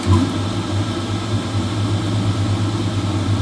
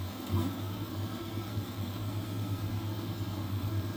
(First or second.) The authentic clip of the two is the first